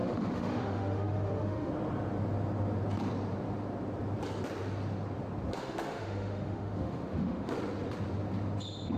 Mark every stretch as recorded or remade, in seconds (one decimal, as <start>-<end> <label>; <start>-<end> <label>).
0.0-1.7 remade; 1.7-5.5 recorded; 5.5-7.5 remade; 7.5-9.0 recorded